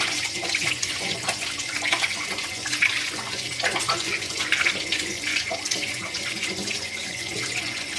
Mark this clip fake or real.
fake